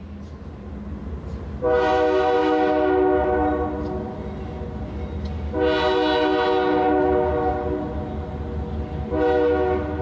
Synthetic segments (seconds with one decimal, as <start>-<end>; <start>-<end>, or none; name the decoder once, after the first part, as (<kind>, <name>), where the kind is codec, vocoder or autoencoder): none